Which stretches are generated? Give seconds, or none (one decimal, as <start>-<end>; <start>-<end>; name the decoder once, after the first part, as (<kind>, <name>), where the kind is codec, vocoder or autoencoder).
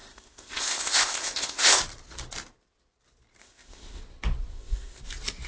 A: 0.0-1.8 (codec, ZipCodec); 3.4-4.0; 4.5-5.0